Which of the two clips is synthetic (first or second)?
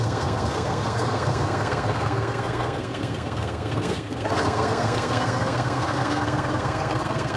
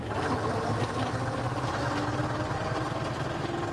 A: first